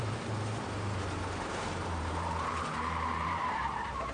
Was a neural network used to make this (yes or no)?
yes